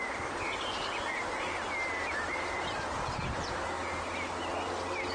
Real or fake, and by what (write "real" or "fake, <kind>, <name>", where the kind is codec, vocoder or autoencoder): real